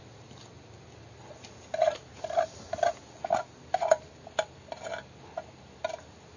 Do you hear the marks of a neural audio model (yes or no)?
no